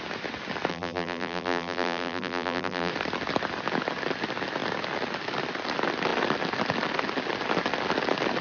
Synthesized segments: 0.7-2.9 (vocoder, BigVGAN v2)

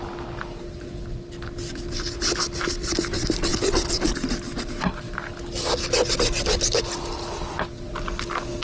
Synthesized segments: none